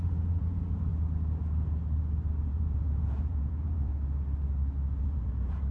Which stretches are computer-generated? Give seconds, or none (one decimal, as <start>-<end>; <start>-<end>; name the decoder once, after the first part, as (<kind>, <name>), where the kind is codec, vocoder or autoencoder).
0.0-0.9 (vocoder, Vocos); 2.4-3.9; 5.0-5.7